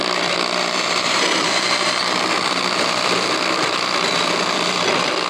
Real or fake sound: fake